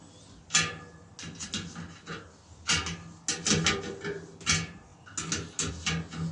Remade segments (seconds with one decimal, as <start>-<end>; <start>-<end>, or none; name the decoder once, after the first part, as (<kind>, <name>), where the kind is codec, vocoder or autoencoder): none